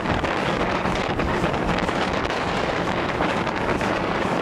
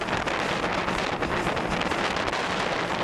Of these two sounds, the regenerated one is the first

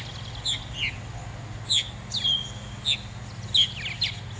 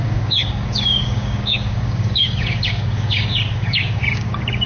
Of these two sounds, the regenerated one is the second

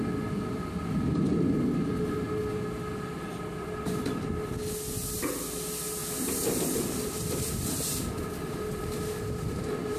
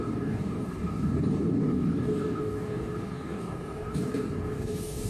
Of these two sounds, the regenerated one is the second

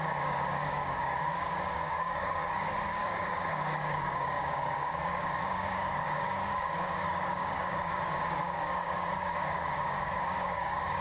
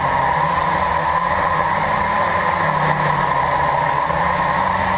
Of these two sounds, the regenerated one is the first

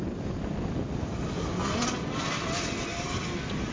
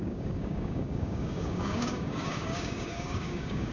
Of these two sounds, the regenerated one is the second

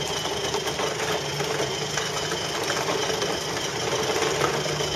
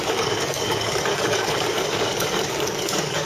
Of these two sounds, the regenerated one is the second